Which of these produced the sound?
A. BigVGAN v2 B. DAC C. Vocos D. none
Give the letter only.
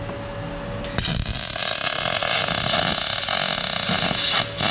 D